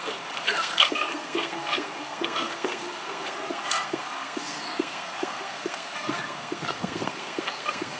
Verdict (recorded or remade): remade